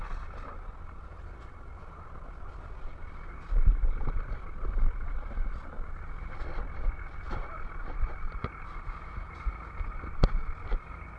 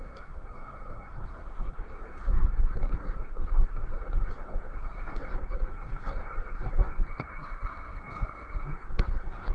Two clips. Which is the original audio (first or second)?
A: first